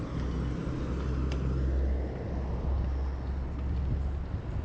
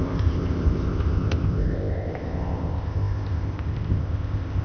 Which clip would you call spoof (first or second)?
second